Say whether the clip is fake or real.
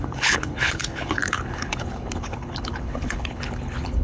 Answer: fake